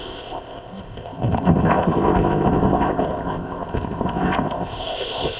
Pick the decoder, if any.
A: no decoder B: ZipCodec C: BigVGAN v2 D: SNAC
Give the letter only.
B